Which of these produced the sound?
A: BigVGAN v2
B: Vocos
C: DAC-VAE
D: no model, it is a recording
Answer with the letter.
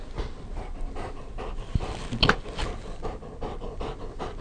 D